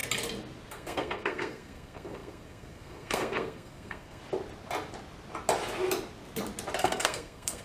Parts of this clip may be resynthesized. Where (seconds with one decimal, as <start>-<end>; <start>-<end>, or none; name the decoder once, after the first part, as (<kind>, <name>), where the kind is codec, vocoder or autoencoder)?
0.7-4.2 (codec, SNAC); 6.8-7.6